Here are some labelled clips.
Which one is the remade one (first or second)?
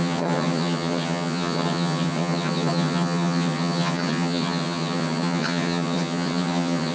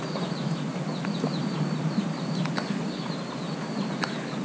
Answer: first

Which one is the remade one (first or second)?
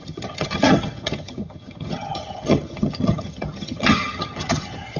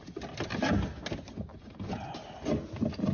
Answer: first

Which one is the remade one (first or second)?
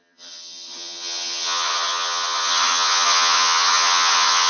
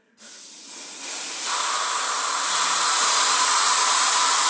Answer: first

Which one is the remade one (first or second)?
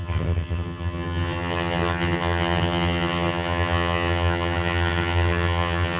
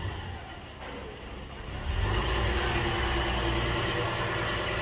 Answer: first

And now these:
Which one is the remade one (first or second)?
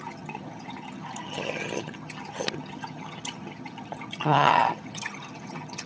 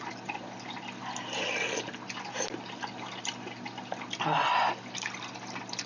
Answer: first